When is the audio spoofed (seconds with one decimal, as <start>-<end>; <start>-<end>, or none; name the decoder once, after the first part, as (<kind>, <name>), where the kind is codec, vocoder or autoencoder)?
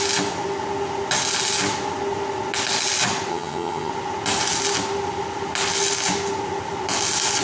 3.3-3.9 (vocoder, HiFi-GAN)